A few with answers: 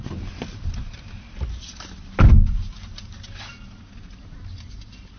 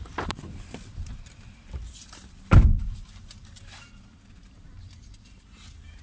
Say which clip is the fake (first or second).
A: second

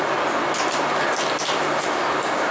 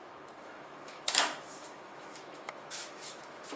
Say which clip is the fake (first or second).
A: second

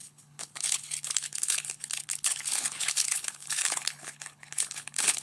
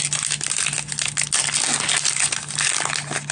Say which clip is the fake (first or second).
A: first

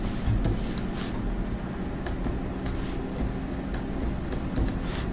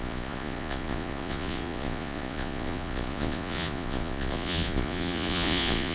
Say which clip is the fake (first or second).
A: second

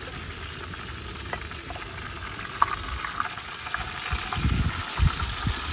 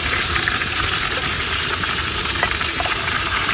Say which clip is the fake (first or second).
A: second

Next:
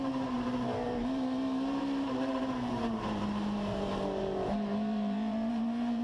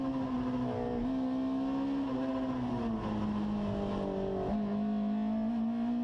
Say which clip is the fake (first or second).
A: first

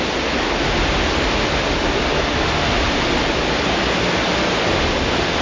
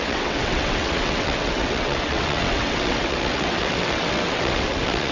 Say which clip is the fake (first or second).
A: second